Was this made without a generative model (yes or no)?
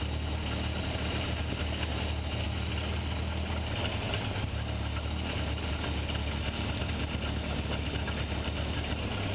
yes